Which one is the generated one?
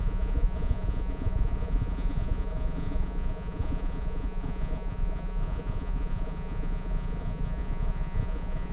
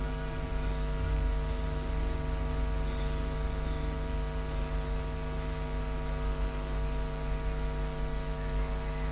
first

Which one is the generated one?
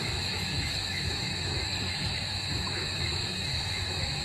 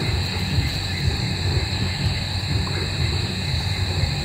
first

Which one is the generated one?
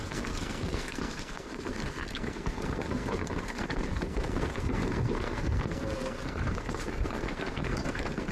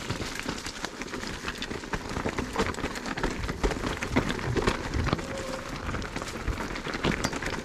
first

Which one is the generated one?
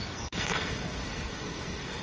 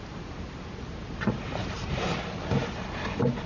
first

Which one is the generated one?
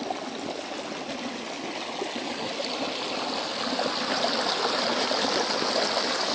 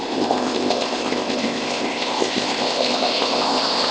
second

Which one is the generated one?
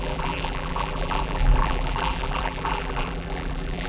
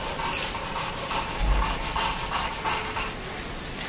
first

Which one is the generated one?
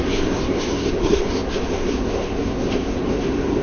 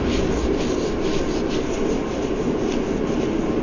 first